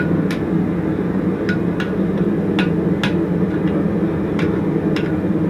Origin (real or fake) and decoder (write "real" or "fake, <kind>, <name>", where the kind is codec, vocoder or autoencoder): real